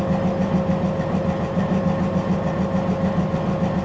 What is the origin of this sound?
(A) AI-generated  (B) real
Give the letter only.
B